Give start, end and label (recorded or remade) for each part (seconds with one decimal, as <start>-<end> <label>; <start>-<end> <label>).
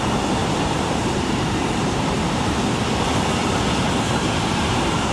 0.0-0.4 recorded; 0.4-2.7 remade; 2.7-5.1 recorded